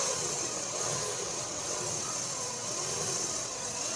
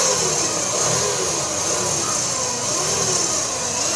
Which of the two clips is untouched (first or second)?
second